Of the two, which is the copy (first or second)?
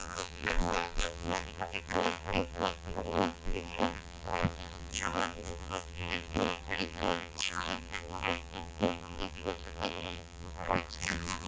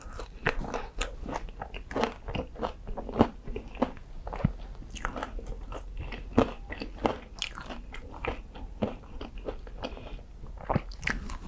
first